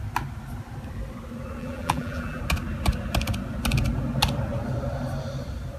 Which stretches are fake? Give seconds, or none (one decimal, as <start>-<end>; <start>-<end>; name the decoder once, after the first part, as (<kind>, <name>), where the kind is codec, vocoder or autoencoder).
1.6-2.4 (vocoder, BigVGAN v2)